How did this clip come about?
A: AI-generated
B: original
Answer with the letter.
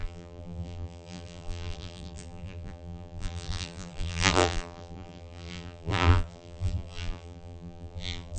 A